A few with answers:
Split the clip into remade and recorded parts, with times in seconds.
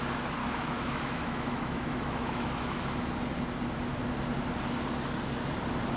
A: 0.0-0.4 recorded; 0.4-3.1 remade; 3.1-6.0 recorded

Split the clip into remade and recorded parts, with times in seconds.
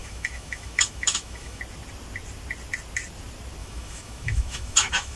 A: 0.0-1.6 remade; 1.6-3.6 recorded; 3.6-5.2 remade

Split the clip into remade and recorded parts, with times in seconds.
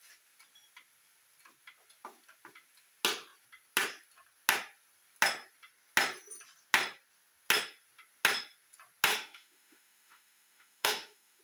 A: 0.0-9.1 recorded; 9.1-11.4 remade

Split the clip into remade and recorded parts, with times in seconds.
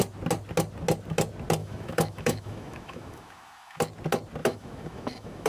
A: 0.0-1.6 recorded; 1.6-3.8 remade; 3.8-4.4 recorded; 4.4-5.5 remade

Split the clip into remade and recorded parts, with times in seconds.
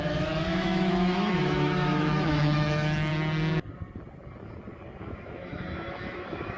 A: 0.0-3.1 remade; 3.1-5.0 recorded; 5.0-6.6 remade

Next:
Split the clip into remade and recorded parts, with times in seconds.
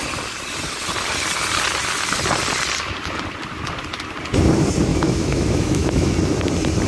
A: 0.0-4.9 recorded; 4.9-6.1 remade; 6.1-6.9 recorded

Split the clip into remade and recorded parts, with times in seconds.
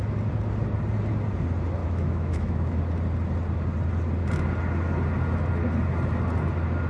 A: 0.0-1.8 recorded; 1.8-2.8 remade; 2.8-6.9 recorded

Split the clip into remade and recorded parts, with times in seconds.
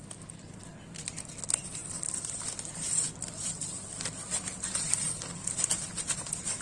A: 0.0-6.6 recorded